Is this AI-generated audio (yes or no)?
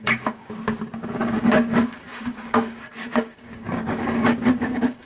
yes